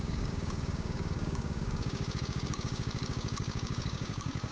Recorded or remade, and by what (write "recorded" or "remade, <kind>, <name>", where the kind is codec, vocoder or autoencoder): remade, codec, DAC